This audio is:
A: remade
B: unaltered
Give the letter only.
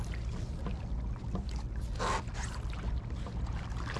B